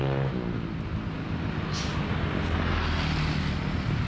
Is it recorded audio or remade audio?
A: recorded